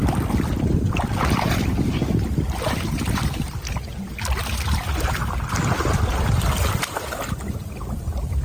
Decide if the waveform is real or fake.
real